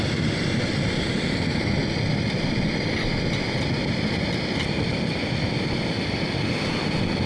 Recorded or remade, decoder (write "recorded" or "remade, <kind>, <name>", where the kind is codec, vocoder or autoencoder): recorded